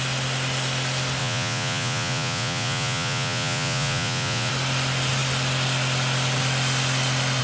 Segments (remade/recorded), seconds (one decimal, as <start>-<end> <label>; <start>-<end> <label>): 0.0-1.2 recorded; 1.2-4.5 remade; 4.5-7.4 recorded